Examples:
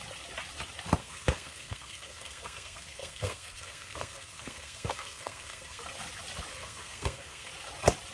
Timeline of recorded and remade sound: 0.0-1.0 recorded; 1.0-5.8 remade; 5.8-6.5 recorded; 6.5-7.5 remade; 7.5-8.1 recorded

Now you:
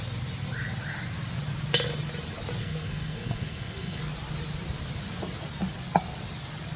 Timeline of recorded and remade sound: 0.0-2.6 recorded; 2.6-4.0 remade; 4.0-6.8 recorded

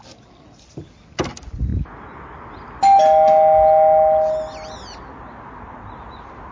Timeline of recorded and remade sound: 0.0-6.5 recorded

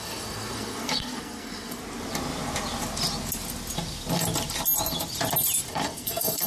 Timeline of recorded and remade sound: 0.0-1.8 remade; 1.8-5.7 recorded; 5.7-6.5 remade

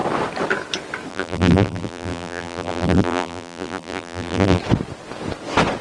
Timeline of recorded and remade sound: 0.0-1.1 recorded; 1.1-4.6 remade; 4.6-5.8 recorded

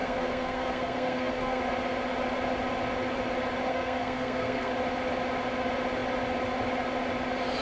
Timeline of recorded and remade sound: 0.0-1.6 remade; 1.6-3.7 recorded; 3.7-4.7 remade; 4.7-7.6 recorded

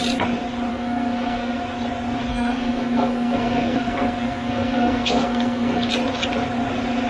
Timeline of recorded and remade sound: 0.0-0.7 recorded; 0.7-1.6 remade; 1.6-2.3 recorded; 2.3-5.9 remade; 5.9-7.1 recorded

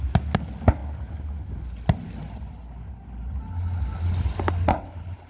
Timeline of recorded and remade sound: 0.0-5.3 recorded